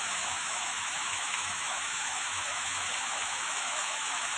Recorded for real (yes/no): no